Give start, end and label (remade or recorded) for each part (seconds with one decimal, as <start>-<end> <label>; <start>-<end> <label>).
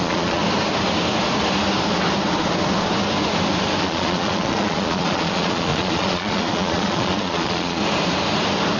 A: 0.0-0.4 remade; 0.4-3.8 recorded; 3.8-7.8 remade; 7.8-8.8 recorded